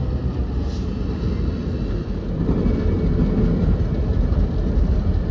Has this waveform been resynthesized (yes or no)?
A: no